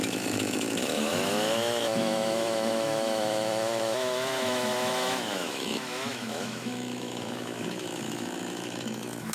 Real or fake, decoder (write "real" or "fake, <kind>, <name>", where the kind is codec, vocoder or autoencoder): fake, autoencoder, DAC-VAE